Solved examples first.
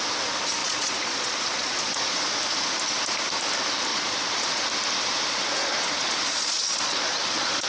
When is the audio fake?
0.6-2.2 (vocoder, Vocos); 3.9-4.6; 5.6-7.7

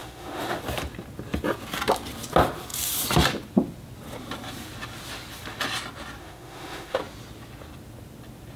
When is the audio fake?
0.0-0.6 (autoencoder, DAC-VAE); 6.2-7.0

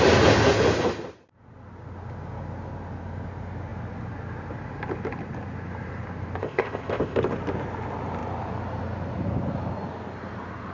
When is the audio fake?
6.4-7.2 (codec, ZipCodec)

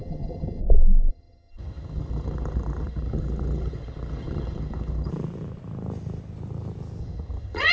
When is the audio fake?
0.0-0.6 (vocoder, HiFi-GAN); 1.1-5.1; 7.0-7.7

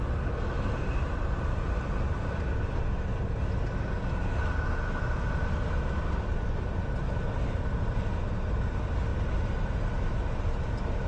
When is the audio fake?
none

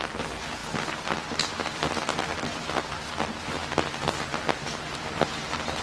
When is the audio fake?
none

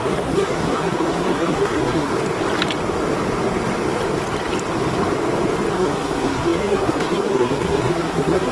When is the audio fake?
0.0-2.1 (codec, SNAC); 5.7-8.5